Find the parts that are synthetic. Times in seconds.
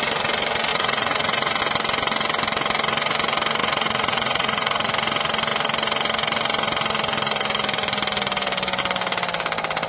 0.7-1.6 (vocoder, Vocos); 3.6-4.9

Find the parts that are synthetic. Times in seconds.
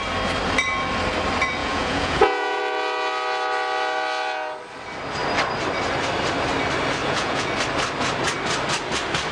1.6-2.6 (vocoder, Vocos); 7.0-7.5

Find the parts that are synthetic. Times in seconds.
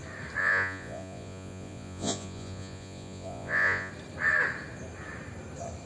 0.4-3.9 (vocoder, Vocos)